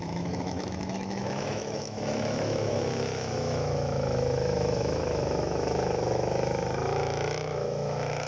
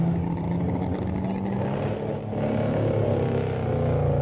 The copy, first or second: first